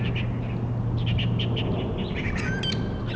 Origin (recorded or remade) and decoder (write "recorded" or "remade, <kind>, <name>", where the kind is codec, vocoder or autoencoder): recorded